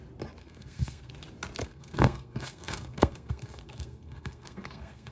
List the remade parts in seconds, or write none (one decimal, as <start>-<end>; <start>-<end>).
0.4-1.1; 1.6-5.1